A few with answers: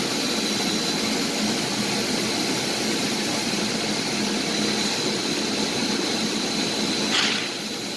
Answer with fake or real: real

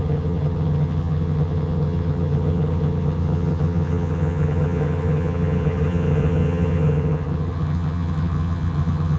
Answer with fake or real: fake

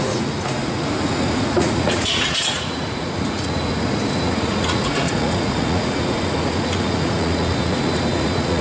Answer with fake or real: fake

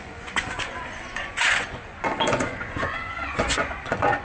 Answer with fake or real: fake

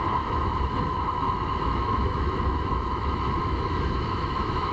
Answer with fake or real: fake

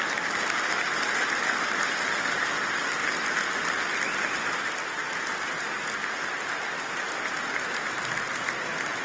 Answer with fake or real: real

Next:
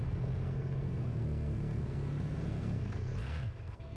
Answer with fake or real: fake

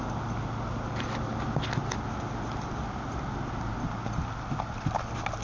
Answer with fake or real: real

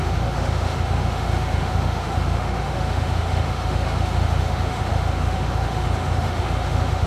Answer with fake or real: fake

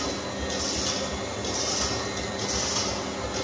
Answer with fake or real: real